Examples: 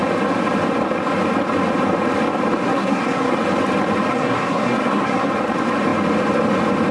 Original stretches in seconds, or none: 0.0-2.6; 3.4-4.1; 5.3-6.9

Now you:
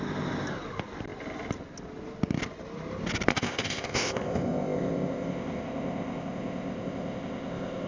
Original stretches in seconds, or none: 0.0-3.3

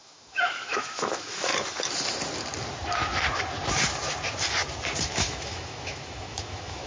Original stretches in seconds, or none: 1.5-5.1

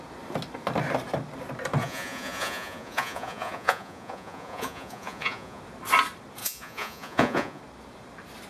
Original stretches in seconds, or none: 0.0-1.8; 5.6-6.4; 7.6-8.5

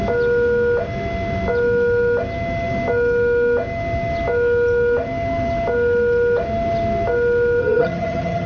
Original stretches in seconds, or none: 0.0-7.6

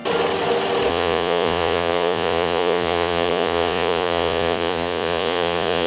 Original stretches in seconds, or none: 0.0-0.9

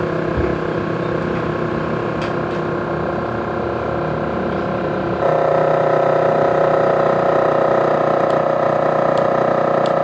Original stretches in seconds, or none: 0.0-10.0